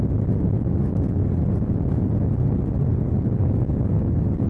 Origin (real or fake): real